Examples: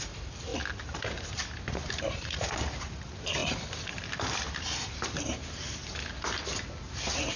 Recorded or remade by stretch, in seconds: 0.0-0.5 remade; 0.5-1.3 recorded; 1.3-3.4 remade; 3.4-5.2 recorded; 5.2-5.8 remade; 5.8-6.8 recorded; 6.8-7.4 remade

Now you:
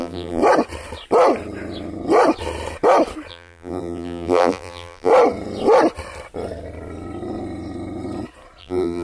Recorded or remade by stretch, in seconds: 0.0-0.4 remade; 0.4-3.3 recorded; 3.3-5.1 remade; 5.1-8.6 recorded; 8.6-9.0 remade

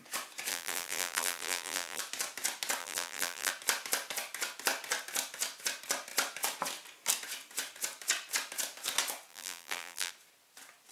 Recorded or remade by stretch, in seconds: 0.0-0.5 recorded; 0.5-2.0 remade; 2.0-2.8 recorded; 2.8-3.5 remade; 3.5-9.3 recorded; 9.3-10.1 remade; 10.1-10.9 recorded

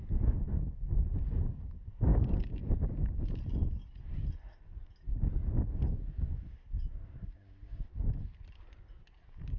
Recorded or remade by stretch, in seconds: 0.0-9.6 recorded